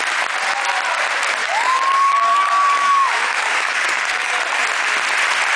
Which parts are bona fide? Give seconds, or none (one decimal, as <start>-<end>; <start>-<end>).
0.0-1.4; 4.4-5.6